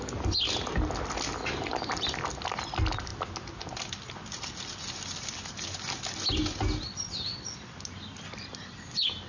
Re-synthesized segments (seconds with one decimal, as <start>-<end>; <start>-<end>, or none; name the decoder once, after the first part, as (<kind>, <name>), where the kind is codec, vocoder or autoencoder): none